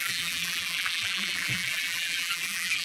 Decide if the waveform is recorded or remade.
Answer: remade